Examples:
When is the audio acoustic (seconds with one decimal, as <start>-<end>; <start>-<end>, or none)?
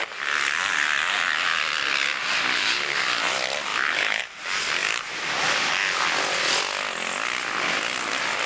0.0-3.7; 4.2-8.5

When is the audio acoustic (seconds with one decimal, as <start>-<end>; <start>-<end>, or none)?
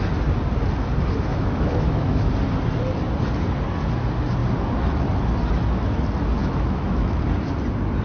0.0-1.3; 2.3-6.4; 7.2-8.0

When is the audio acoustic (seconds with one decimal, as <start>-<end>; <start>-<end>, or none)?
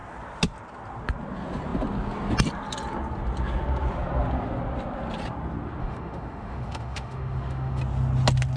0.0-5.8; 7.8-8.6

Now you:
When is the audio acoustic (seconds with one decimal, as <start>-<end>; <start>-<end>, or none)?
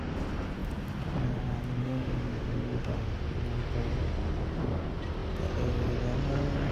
0.0-1.8; 3.1-6.7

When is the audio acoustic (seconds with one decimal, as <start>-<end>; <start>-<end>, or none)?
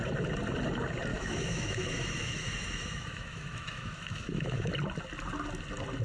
0.0-1.1; 4.7-6.0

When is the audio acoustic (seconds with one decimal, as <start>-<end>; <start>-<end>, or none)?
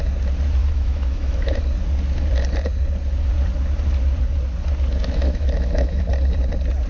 0.0-0.6; 1.6-5.0; 6.1-6.9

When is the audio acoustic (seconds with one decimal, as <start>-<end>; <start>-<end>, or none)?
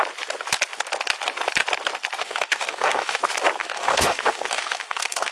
0.0-2.2; 3.2-3.6